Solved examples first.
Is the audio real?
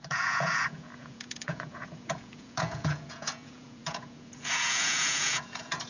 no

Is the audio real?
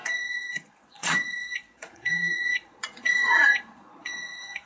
no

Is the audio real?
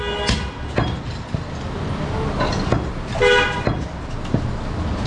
yes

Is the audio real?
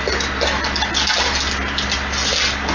yes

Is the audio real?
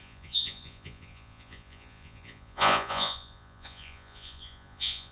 no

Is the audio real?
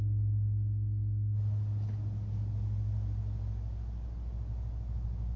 yes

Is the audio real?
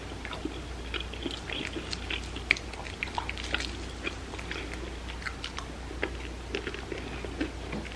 yes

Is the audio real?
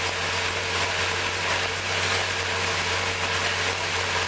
yes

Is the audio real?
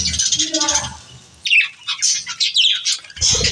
yes